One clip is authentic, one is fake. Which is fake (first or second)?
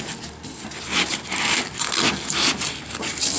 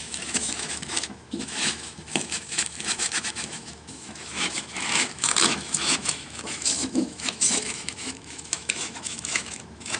second